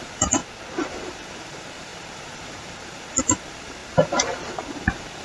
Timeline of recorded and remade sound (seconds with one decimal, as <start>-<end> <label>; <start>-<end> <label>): 0.0-0.4 remade; 0.4-0.9 recorded; 0.9-5.2 remade

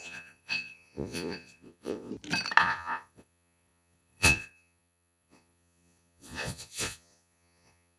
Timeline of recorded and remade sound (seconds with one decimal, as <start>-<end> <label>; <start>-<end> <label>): 0.0-2.1 remade; 2.1-2.6 recorded; 2.6-8.0 remade

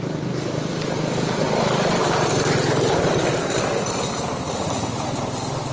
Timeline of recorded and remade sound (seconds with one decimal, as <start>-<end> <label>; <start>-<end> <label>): 0.0-5.7 recorded

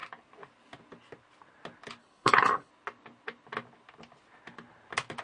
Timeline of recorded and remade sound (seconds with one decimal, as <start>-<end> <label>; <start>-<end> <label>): 0.0-2.0 recorded; 2.0-2.7 remade; 2.7-5.2 recorded